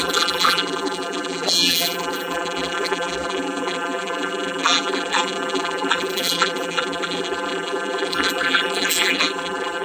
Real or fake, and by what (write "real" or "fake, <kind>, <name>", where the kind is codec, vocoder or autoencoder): fake, vocoder, BigVGAN v2